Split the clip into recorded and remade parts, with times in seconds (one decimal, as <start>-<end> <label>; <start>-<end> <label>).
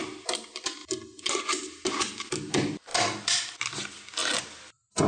0.0-5.1 recorded